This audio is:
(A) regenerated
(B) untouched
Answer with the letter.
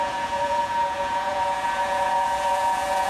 A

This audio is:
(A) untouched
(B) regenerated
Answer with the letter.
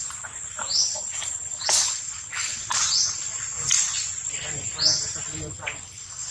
A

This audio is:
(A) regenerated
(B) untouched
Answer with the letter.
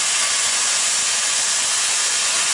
A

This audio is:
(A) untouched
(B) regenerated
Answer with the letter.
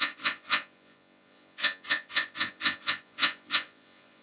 B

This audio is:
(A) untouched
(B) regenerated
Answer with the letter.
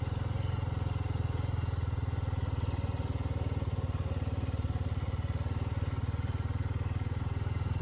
A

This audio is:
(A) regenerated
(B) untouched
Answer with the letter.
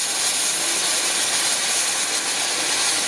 B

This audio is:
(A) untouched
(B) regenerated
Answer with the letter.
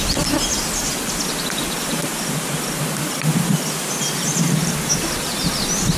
A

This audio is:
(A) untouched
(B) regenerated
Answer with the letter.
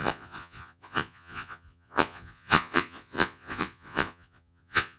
B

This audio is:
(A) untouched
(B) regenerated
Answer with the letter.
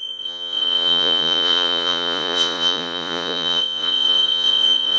B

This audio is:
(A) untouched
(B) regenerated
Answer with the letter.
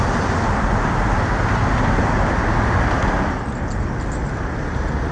A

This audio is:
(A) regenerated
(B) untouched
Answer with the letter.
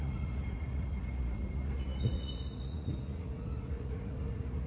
A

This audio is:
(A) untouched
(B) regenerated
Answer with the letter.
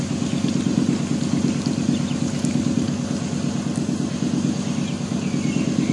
A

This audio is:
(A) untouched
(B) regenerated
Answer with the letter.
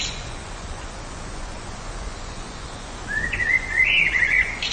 B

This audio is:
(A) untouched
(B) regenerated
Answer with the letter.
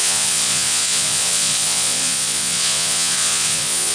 B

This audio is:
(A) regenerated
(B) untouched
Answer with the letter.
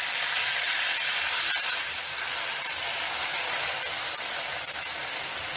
B